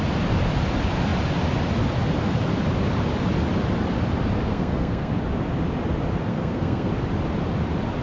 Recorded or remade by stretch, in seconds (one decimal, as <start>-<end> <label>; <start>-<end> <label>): 0.0-4.5 recorded; 4.5-5.1 remade; 5.1-6.3 recorded; 6.3-6.9 remade; 6.9-8.0 recorded